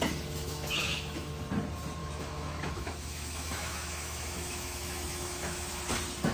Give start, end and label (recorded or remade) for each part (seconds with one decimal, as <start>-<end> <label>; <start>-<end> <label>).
0.0-0.4 recorded; 0.4-1.3 remade; 1.3-2.0 recorded; 2.0-5.8 remade; 5.8-6.3 recorded